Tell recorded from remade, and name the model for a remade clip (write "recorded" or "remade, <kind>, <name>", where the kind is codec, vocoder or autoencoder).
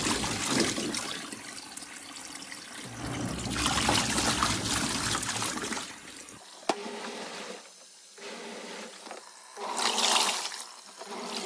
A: recorded